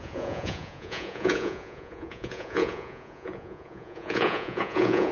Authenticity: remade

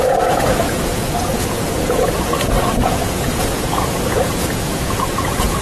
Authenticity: remade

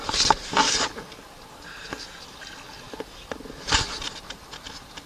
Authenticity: recorded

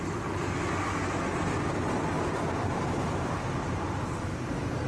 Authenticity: recorded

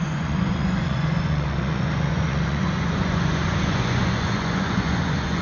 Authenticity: remade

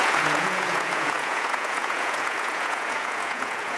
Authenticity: remade